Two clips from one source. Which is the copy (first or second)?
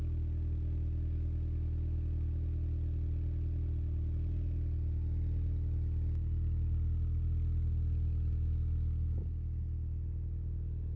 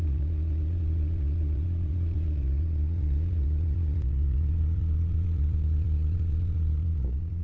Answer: second